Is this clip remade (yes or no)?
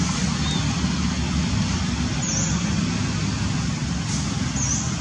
no